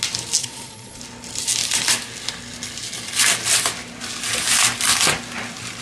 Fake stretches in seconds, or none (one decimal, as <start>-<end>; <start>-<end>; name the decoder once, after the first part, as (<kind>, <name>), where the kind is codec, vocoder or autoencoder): 0.4-1.0 (vocoder, Vocos)